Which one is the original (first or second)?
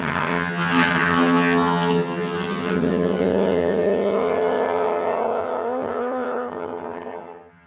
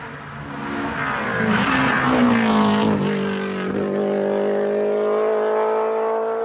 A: second